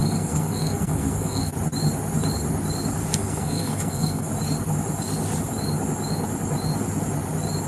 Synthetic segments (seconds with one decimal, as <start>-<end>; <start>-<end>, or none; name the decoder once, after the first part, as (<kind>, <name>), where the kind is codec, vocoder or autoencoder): 0.0-1.5 (codec, SNAC); 3.1-4.3